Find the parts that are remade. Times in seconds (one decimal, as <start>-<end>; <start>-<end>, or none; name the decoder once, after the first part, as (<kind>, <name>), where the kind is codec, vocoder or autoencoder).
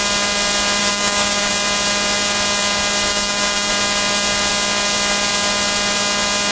0.8-1.5 (codec, DAC); 3.1-3.7